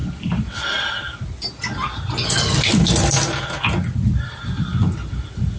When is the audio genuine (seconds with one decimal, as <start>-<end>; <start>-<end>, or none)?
0.0-5.6